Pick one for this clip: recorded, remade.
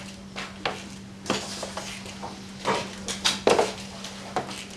recorded